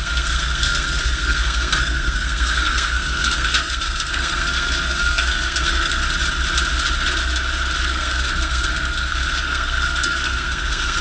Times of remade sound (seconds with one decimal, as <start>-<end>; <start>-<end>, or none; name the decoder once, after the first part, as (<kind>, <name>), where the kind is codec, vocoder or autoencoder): 0.0-6.0 (codec, SNAC); 7.8-11.0